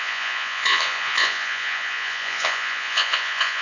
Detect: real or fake fake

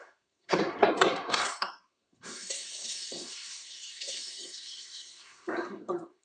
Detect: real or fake fake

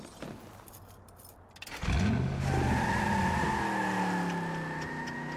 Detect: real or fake real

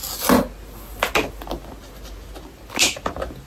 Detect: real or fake real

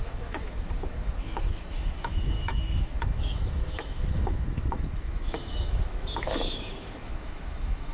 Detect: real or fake fake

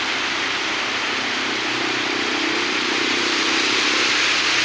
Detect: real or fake real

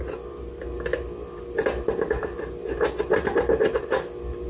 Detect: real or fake real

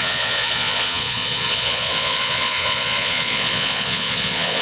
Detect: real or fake fake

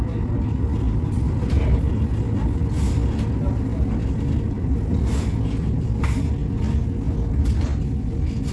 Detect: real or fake real